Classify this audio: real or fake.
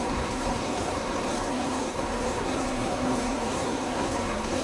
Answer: fake